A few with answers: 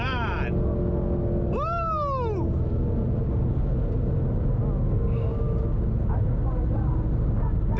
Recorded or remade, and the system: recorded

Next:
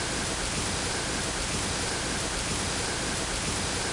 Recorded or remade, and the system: recorded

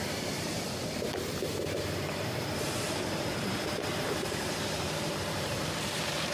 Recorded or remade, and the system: remade, vocoder, BigVGAN v2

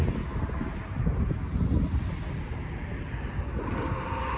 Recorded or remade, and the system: recorded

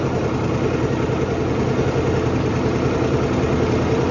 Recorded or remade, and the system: recorded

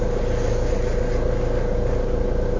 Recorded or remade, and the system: recorded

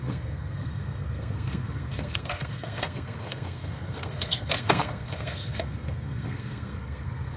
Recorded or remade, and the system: remade, codec, SNAC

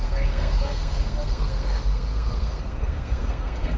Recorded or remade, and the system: remade, codec, SNAC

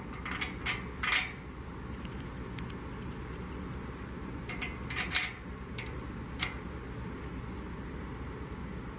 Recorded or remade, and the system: recorded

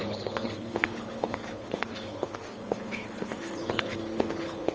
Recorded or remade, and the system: remade, codec, HILCodec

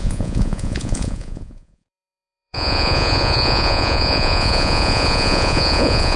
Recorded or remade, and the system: remade, vocoder, Vocos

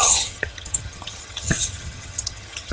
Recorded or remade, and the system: remade, vocoder, HiFi-GAN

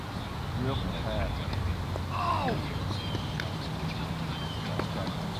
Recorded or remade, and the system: recorded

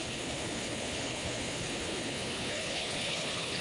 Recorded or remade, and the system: remade, codec, HILCodec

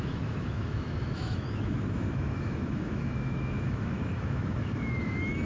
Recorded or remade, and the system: remade, autoencoder, DAC-VAE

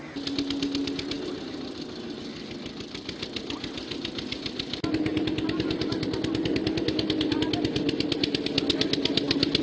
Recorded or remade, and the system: recorded